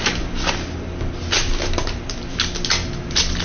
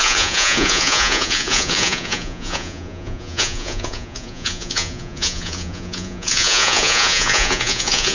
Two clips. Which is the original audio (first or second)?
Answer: first